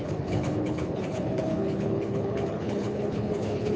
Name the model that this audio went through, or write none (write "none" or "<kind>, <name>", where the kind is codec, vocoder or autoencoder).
codec, HILCodec